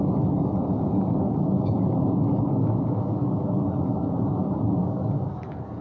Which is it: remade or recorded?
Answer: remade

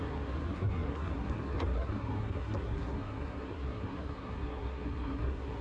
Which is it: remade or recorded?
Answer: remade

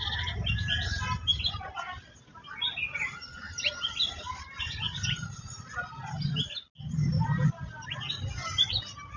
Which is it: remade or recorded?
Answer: recorded